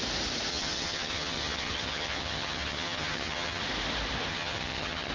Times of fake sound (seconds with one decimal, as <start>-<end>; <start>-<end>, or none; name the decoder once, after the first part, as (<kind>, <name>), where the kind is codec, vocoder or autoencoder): 0.5-3.6 (vocoder, HiFi-GAN); 4.3-5.1